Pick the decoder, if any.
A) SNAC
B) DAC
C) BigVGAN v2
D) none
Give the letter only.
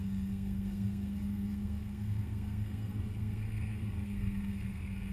A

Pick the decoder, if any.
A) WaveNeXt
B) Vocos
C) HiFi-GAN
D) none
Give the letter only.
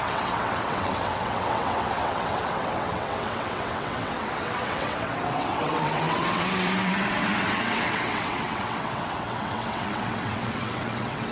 A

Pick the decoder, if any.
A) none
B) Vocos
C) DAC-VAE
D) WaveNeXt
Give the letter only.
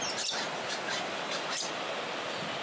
A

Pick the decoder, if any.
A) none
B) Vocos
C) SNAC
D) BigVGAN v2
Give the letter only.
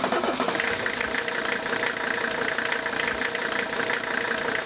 A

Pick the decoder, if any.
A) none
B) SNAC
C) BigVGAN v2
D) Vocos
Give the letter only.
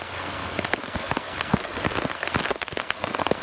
B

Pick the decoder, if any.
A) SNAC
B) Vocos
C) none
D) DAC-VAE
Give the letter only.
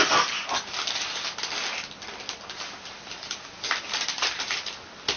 C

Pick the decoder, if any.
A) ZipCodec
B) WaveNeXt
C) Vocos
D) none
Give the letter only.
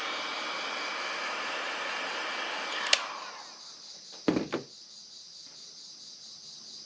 D